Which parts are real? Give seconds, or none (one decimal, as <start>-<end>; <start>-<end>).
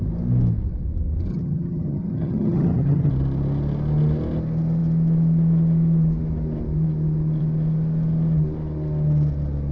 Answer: 0.0-1.3; 3.1-9.7